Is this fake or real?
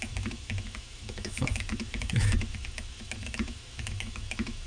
fake